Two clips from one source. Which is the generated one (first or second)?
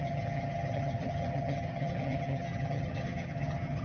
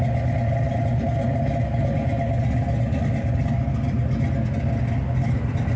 first